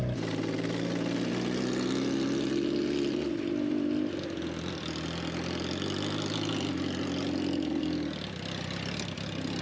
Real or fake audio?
real